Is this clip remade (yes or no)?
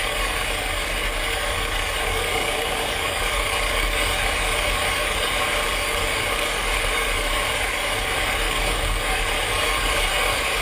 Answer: yes